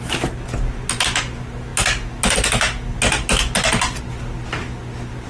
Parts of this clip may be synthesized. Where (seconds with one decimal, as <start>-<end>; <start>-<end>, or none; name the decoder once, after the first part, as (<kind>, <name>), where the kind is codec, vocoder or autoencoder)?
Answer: none